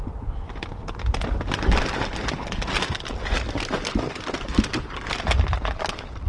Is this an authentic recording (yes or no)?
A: yes